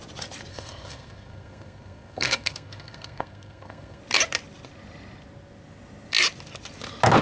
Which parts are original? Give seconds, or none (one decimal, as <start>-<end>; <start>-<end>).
0.0-0.5; 4.0-7.2

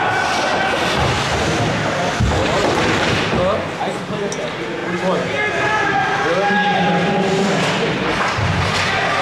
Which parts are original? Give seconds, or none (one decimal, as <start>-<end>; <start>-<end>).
0.0-2.4; 3.1-9.2

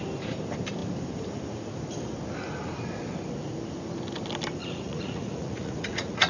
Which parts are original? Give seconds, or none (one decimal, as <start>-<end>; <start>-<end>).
0.0-4.6

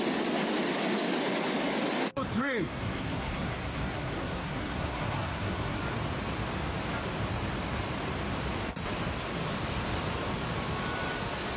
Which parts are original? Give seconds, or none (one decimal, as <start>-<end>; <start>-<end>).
0.0-2.4; 5.8-11.6

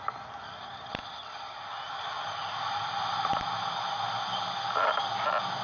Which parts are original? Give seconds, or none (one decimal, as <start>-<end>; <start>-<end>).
0.0-5.6

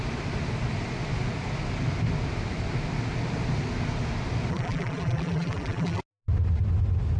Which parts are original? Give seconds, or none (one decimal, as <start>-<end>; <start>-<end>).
0.0-4.5; 6.0-7.2

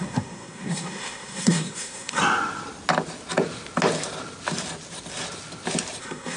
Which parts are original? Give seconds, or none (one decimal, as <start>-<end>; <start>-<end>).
2.2-6.0

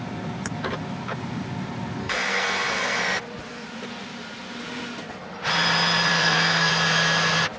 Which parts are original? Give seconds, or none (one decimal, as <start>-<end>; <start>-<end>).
0.0-2.0; 3.0-6.1; 6.7-7.6